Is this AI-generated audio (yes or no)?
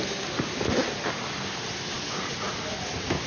no